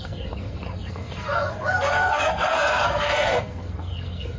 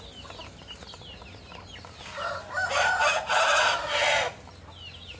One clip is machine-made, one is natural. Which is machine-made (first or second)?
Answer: first